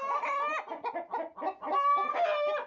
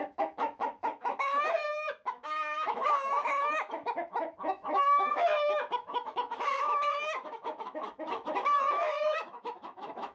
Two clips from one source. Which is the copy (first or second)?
second